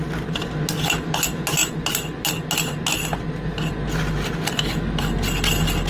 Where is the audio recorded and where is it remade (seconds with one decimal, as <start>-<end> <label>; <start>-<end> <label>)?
0.0-5.9 recorded